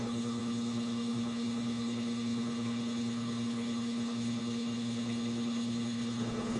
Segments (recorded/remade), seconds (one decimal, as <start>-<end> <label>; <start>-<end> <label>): 0.0-6.6 remade

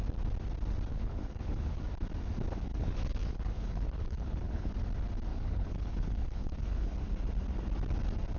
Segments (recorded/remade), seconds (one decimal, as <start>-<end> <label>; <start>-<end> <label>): 0.0-0.9 recorded; 0.9-1.8 remade; 1.8-2.7 recorded; 2.7-4.7 remade; 4.7-5.3 recorded; 5.3-7.0 remade; 7.0-8.4 recorded

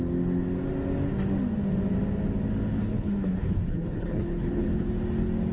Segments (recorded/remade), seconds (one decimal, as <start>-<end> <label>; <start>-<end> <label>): 0.0-2.7 recorded; 2.7-4.9 remade; 4.9-5.5 recorded